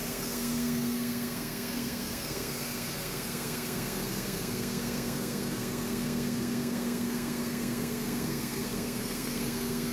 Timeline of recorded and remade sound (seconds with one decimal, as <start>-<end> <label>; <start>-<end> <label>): 0.0-9.9 remade